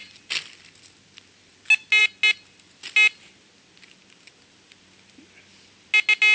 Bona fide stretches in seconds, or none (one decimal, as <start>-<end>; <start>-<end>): 0.0-6.3